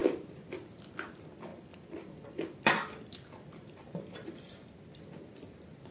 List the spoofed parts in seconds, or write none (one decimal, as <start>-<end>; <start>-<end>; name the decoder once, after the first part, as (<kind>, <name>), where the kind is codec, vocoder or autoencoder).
1.5-5.0 (vocoder, BigVGAN v2)